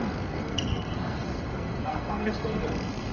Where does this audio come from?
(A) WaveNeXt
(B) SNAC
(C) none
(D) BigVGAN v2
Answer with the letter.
B